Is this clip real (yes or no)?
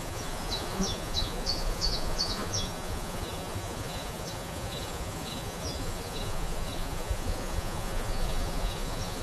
no